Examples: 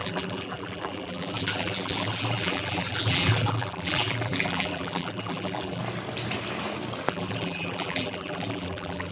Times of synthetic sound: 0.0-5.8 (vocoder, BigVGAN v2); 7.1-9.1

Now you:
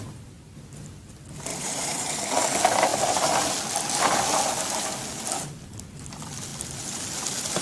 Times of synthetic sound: 1.5-2.2 (vocoder, BigVGAN v2)

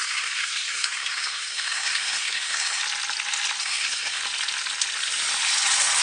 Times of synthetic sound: 0.0-2.8 (codec, SNAC); 3.6-4.2